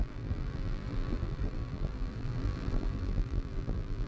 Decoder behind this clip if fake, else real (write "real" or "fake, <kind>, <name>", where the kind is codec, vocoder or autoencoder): fake, vocoder, BigVGAN v2